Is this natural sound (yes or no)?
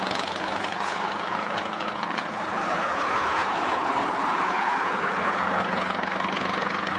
no